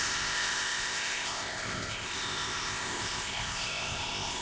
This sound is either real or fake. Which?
fake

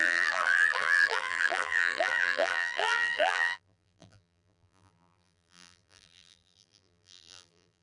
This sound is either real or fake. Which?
fake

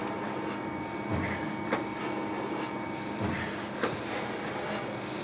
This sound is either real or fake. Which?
real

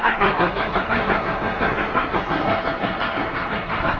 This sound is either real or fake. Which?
fake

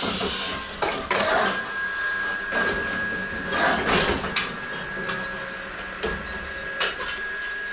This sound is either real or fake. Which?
real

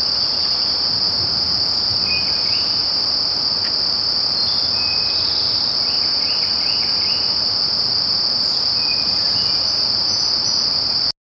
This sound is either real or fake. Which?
real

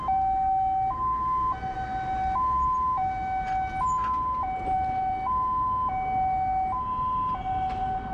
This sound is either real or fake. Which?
real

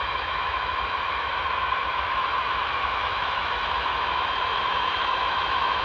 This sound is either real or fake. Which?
fake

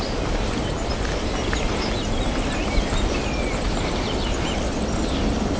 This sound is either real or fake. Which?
real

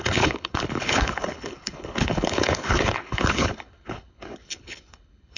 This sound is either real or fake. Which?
fake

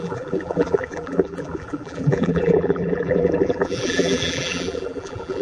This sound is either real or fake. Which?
fake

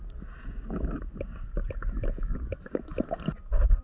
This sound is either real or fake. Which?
real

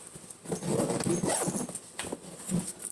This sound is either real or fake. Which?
real